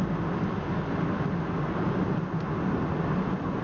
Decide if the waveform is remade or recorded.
recorded